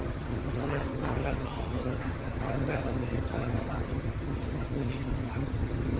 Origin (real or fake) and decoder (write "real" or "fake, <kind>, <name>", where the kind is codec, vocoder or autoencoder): fake, vocoder, HiFi-GAN